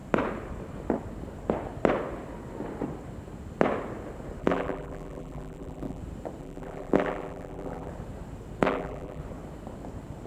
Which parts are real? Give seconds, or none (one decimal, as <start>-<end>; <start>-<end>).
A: 0.0-4.4; 6.0-6.4; 7.9-8.6; 9.2-10.3